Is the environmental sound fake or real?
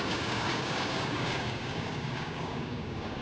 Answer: fake